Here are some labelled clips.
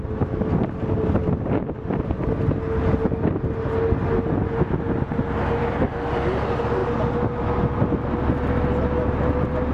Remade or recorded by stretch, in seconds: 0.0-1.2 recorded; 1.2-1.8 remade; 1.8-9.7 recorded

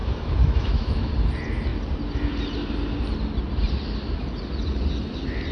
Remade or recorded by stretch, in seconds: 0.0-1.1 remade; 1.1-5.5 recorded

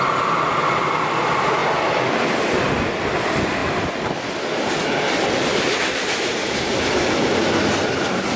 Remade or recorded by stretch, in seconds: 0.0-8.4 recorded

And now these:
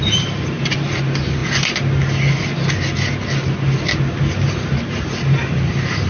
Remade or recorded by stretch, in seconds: 0.0-1.4 remade; 1.4-5.1 recorded; 5.1-6.1 remade

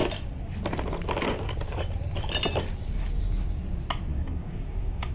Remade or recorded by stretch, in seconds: 0.0-4.1 recorded; 4.1-5.1 remade